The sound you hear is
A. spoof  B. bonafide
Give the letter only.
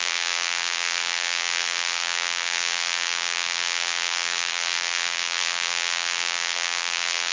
A